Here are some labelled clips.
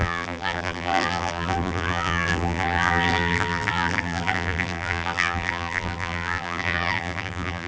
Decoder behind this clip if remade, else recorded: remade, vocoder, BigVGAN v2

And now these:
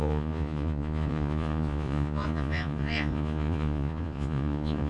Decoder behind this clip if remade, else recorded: remade, vocoder, Vocos